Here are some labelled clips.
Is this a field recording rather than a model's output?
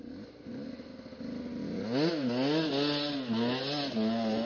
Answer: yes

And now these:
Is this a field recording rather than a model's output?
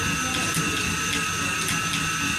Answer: yes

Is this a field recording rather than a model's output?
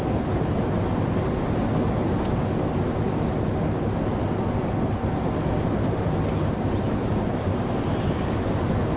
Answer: yes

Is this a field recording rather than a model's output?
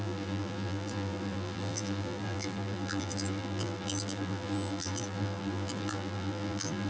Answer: no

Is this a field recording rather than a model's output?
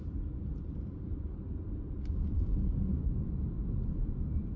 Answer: no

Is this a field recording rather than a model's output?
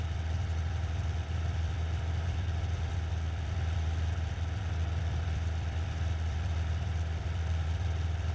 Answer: no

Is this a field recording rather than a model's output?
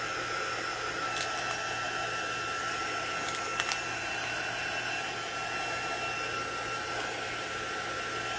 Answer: yes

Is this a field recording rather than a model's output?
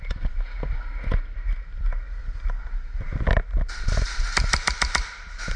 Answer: yes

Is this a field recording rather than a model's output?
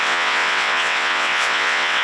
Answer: no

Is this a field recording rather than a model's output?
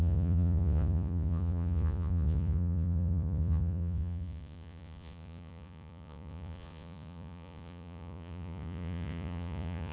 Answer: no